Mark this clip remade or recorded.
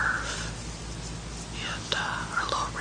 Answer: recorded